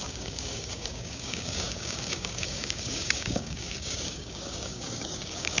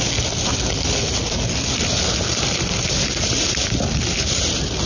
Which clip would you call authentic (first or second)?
second